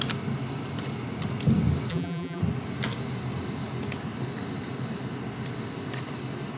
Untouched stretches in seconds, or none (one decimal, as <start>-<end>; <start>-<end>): 0.0-1.9; 2.4-6.6